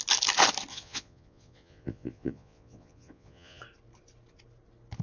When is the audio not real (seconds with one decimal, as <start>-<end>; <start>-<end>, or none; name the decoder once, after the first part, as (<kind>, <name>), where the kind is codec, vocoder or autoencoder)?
0.7-3.6 (vocoder, Vocos)